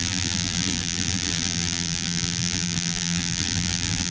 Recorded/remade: remade